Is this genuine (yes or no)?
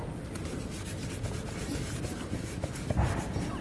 yes